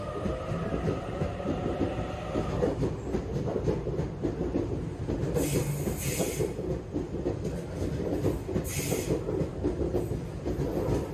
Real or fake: real